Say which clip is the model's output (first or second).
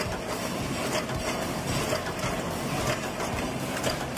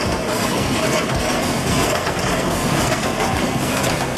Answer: second